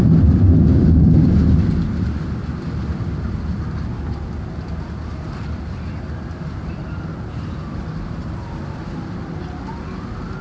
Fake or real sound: real